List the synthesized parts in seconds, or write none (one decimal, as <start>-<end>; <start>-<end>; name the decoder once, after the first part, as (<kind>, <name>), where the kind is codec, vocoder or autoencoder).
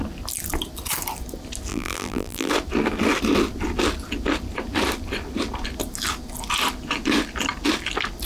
1.7-2.5 (vocoder, BigVGAN v2)